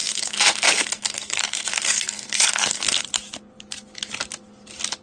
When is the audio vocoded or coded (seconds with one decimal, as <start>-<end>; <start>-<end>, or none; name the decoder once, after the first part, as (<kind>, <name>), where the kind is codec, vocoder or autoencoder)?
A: 0.0-3.0 (codec, SNAC)